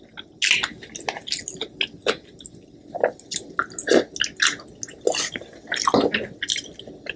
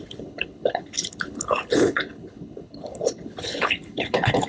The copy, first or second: second